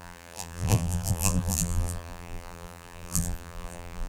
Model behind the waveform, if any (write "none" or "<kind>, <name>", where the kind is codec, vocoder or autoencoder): vocoder, BigVGAN v2